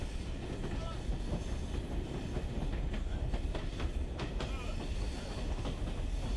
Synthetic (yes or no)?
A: no